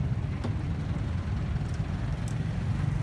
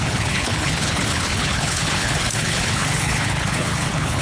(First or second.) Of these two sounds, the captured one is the first